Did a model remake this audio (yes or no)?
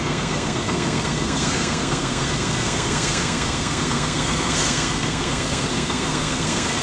yes